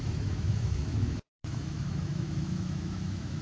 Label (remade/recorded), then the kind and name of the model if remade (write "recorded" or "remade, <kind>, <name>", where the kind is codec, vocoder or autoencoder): remade, autoencoder, DAC-VAE